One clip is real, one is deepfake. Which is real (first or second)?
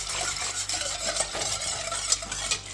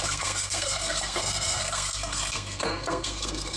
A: first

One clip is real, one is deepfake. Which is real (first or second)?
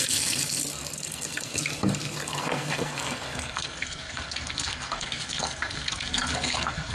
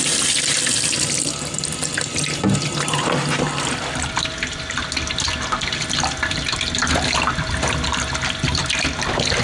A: second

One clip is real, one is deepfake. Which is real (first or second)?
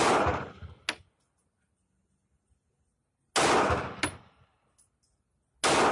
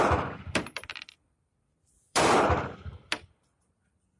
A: first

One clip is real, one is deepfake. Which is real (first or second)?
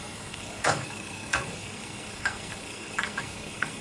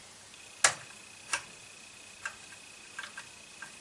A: second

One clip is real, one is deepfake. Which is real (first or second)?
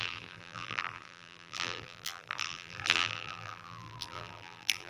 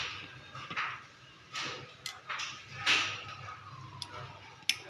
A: second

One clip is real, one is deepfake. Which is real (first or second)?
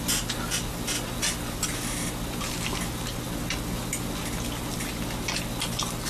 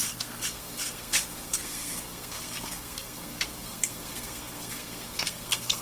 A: first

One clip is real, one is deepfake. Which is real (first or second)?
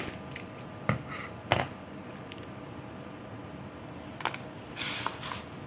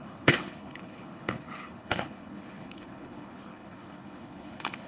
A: first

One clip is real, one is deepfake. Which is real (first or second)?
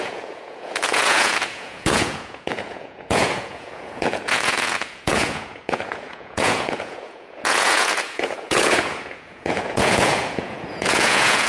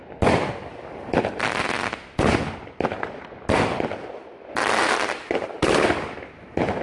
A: second